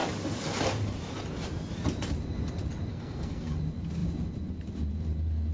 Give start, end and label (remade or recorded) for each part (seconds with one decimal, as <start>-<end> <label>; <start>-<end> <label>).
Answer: 0.0-2.9 recorded; 2.9-3.6 remade; 3.6-5.5 recorded